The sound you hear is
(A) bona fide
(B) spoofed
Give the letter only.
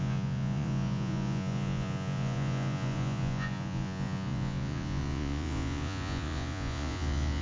B